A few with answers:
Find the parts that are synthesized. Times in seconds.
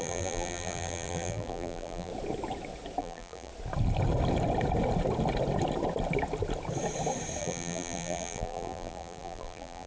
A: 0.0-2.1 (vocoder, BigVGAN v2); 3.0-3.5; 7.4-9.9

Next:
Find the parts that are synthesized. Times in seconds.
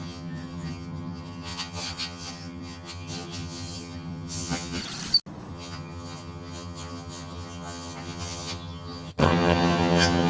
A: 0.0-4.8 (vocoder, HiFi-GAN); 5.5-10.3